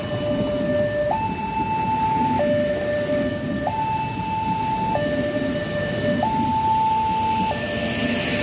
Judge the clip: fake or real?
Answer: real